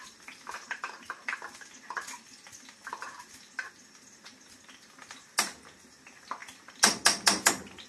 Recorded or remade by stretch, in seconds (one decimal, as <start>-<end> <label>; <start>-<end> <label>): 0.0-7.9 recorded